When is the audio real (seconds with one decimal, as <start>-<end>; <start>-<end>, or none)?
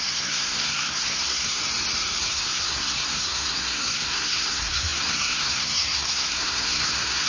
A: 1.6-2.2